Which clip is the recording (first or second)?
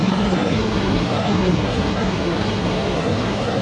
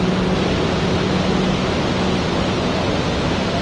second